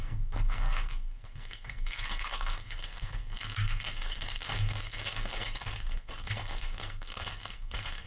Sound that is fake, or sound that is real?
fake